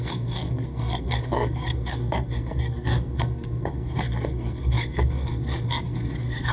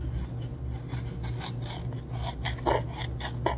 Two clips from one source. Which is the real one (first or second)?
second